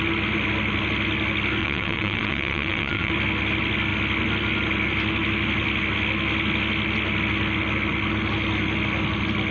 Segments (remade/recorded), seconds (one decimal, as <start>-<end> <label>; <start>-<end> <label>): 0.0-1.6 recorded; 1.6-3.1 remade; 3.1-9.5 recorded